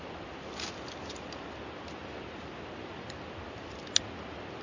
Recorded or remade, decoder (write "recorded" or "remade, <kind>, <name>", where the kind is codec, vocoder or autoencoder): recorded